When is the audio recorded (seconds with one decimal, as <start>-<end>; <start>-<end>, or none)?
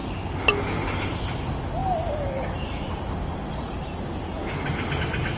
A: 0.0-5.4